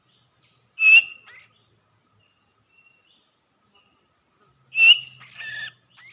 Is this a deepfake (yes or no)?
no